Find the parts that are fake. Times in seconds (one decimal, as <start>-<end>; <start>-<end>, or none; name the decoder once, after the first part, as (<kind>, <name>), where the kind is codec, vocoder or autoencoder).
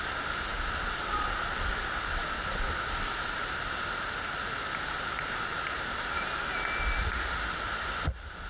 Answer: none